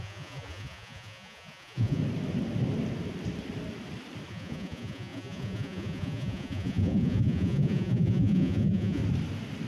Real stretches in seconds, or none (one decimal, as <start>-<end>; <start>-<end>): 2.0-4.3; 9.0-9.7